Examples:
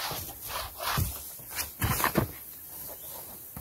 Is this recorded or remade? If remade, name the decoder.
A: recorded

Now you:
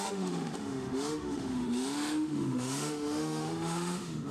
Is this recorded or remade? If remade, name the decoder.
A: remade, autoencoder, DAC-VAE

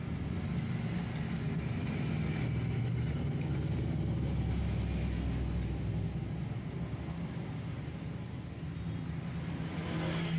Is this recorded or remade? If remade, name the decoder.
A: recorded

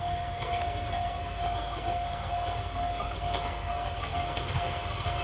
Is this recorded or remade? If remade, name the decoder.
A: remade, codec, SNAC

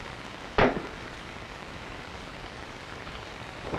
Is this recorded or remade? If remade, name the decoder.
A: remade, codec, DAC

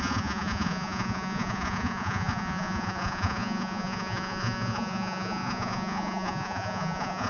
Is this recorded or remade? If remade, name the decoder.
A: remade, vocoder, Vocos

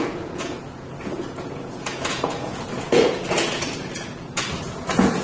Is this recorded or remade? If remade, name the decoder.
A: remade, vocoder, Vocos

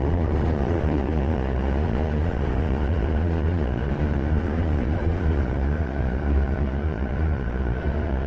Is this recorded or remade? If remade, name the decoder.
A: remade, vocoder, Vocos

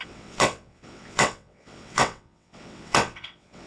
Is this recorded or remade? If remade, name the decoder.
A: remade, vocoder, WaveNeXt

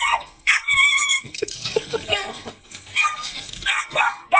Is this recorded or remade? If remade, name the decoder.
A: remade, codec, SNAC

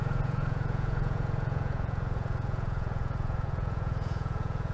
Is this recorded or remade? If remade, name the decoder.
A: remade, vocoder, Vocos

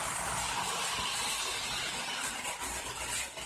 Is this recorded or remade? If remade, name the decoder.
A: recorded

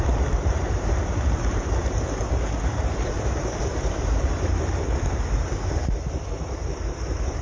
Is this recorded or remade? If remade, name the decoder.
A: remade, vocoder, BigVGAN v2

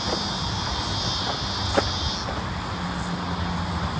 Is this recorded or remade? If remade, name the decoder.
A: recorded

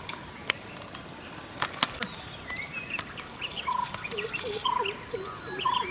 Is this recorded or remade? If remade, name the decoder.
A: recorded